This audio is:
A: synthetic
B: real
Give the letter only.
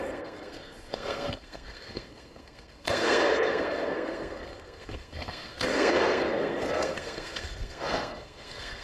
A